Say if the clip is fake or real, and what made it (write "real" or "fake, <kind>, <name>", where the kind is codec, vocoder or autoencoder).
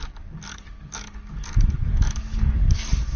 fake, codec, DAC